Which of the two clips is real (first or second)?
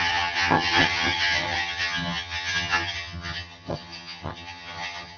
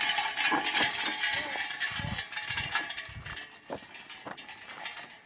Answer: second